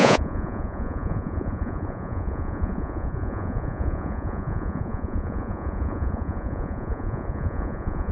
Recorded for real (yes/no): no